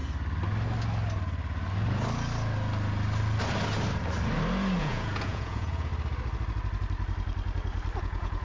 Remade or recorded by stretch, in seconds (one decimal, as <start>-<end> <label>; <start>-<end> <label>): 0.0-4.8 recorded; 4.8-5.9 remade; 5.9-8.0 recorded; 8.0-8.4 remade